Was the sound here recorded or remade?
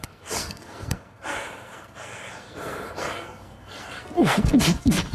remade